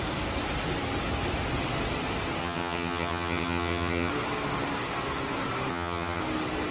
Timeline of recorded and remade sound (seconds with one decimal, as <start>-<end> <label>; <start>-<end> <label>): 0.0-2.4 recorded; 2.4-4.1 remade; 4.1-5.7 recorded; 5.7-6.2 remade; 6.2-6.7 recorded